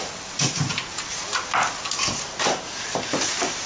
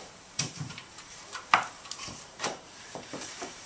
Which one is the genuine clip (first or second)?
first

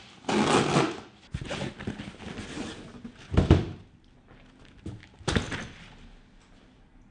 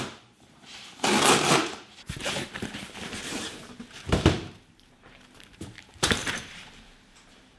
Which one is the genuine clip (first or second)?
first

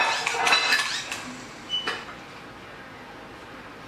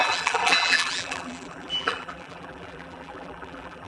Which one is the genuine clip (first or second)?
first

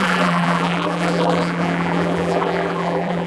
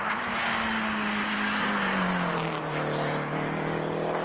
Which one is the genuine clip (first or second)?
second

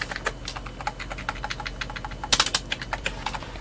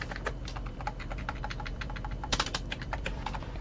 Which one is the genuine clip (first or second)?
first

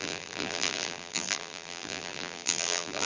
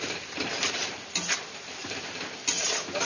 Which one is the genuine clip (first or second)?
second